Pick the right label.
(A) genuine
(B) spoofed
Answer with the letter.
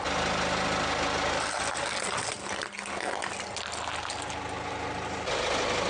A